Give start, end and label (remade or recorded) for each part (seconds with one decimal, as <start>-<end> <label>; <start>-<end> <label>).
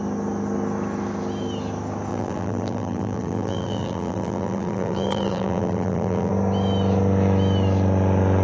0.0-2.1 recorded; 2.1-6.3 remade; 6.3-8.4 recorded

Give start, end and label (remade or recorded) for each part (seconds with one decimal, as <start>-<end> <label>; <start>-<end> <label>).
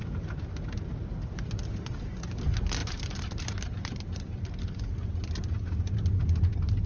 0.0-2.8 recorded; 2.8-4.8 remade; 4.8-6.9 recorded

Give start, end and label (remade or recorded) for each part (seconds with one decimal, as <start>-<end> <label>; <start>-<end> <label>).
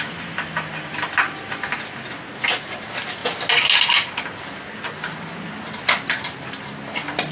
0.0-7.3 recorded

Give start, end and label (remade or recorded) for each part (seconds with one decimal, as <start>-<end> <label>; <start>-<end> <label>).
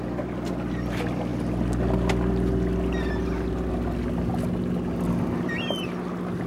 0.0-6.5 recorded